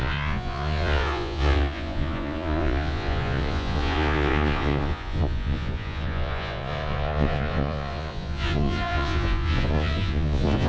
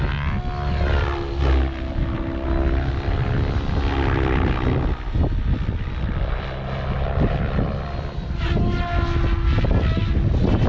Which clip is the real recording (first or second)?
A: second